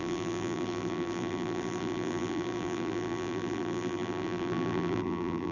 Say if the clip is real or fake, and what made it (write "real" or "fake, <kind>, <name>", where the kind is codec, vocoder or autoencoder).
fake, vocoder, BigVGAN v2